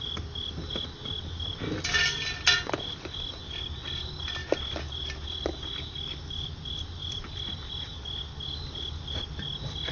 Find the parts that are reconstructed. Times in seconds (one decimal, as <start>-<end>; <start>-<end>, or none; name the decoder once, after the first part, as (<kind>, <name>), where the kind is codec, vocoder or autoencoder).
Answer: none